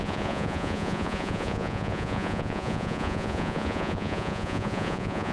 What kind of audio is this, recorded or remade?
remade